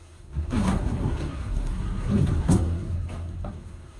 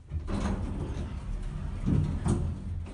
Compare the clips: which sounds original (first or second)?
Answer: second